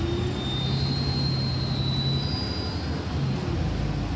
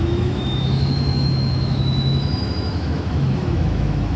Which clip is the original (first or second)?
first